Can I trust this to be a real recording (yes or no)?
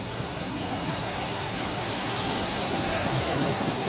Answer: no